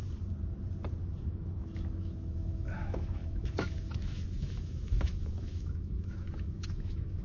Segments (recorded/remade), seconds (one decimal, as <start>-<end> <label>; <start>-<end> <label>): 0.0-1.0 recorded; 1.0-7.2 remade